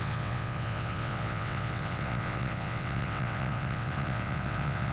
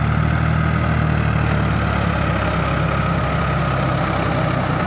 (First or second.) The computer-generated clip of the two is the first